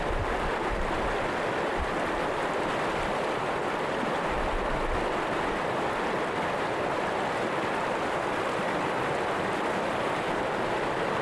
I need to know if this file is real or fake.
real